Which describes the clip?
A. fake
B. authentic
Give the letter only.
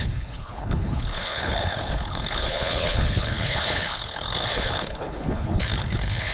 A